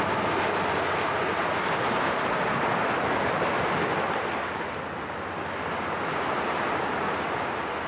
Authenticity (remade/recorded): recorded